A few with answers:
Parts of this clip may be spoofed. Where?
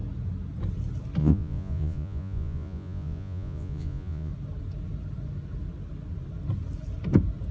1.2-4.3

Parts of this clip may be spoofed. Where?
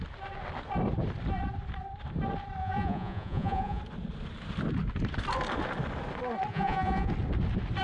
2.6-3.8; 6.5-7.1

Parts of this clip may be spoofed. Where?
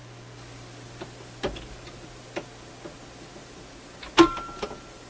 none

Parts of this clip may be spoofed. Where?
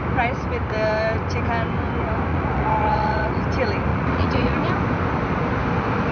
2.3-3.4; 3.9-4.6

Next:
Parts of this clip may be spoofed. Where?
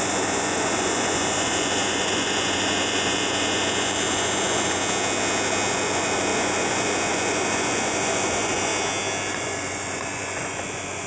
0.0-4.8; 5.7-8.7; 9.3-11.1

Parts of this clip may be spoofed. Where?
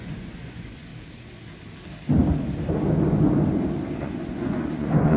0.0-0.9; 4.0-5.2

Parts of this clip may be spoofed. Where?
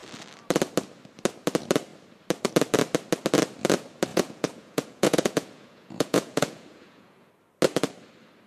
4.1-7.3